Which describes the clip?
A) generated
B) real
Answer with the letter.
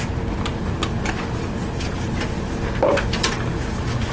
B